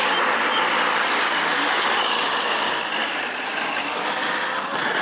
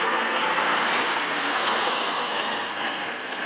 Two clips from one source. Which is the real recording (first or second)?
first